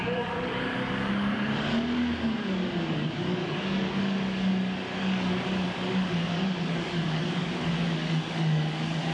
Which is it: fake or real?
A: fake